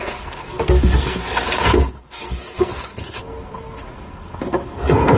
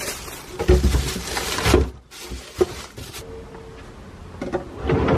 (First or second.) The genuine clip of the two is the second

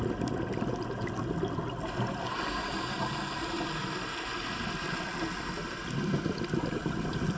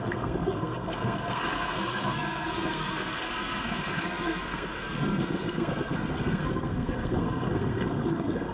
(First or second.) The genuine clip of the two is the first